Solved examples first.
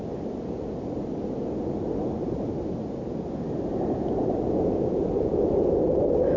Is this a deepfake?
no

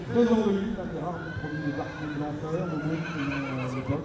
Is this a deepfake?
no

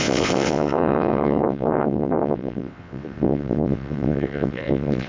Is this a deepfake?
yes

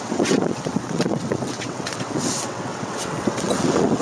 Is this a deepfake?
yes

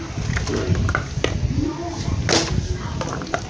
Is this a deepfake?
no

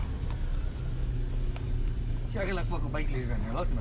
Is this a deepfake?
no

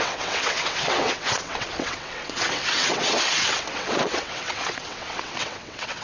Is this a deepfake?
yes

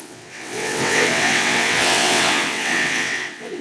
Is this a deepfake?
yes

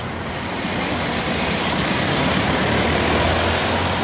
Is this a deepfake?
no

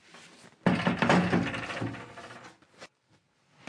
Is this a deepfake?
no